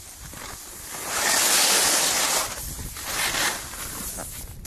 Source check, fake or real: real